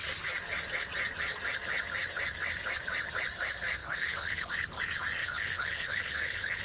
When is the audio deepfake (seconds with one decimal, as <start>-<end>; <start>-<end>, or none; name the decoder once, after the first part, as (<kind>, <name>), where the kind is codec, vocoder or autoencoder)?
3.8-4.5 (codec, HILCodec); 5.2-6.6